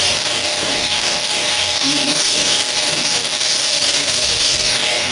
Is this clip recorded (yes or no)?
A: no